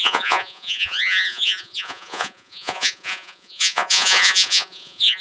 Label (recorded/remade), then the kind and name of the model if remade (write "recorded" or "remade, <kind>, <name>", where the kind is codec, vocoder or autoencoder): remade, vocoder, Vocos